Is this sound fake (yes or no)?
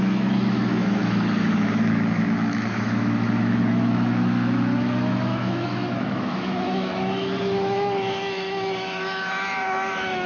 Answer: yes